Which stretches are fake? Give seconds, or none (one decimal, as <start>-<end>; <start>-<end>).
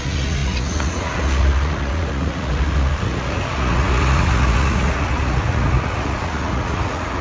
0.0-7.2